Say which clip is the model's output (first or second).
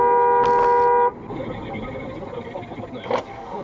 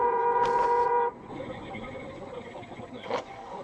second